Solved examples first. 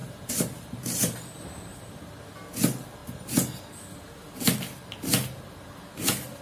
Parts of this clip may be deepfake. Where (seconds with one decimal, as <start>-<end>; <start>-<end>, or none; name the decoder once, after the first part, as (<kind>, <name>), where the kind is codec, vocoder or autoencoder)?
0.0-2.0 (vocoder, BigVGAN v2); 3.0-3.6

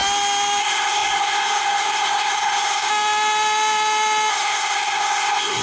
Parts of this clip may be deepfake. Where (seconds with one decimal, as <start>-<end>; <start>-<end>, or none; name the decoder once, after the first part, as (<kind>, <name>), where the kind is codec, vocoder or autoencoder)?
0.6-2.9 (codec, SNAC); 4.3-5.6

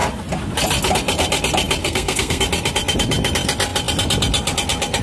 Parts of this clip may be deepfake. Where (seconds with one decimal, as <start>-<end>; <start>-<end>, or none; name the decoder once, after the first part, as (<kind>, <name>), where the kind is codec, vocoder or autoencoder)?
1.8-2.4 (codec, SNAC)

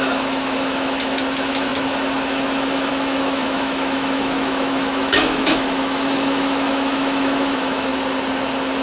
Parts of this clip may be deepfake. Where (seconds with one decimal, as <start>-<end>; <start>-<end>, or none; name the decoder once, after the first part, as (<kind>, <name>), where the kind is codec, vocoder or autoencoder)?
0.0-7.9 (autoencoder, DAC-VAE)

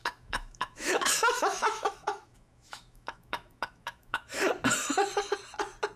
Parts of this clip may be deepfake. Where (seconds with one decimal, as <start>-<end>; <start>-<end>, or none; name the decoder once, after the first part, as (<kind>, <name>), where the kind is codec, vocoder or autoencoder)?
0.0-4.5 (autoencoder, DAC-VAE)

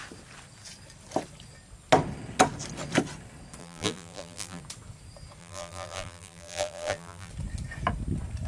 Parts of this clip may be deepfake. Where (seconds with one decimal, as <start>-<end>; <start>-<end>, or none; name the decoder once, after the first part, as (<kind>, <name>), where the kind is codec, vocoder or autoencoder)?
3.6-4.6 (vocoder, BigVGAN v2); 5.4-7.3

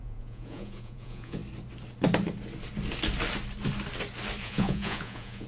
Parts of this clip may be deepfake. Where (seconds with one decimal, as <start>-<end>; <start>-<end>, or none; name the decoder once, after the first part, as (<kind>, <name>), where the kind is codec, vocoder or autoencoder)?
0.0-1.4 (vocoder, Vocos); 4.4-5.5

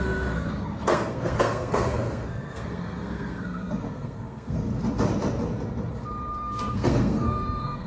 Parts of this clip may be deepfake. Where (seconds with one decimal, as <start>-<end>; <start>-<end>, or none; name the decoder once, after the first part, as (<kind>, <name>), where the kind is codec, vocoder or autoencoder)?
0.0-4.7 (codec, SNAC); 6.3-7.9